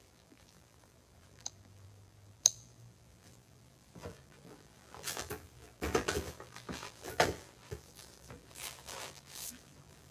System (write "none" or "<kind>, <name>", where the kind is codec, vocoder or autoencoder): vocoder, BigVGAN v2